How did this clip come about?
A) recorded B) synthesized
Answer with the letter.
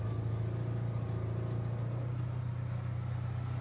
A